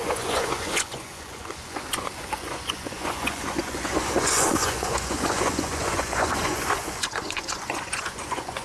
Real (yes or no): no